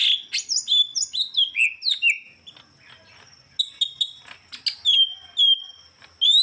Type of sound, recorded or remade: recorded